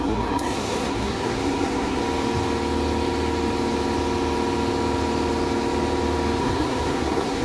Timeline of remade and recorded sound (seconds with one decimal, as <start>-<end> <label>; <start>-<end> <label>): 0.0-2.0 remade; 2.0-6.4 recorded; 6.4-7.4 remade